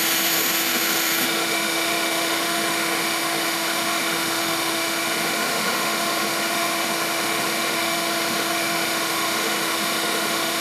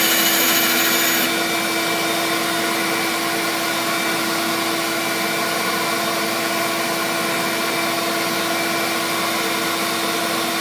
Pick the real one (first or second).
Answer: second